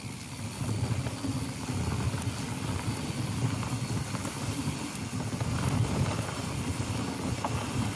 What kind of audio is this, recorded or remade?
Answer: recorded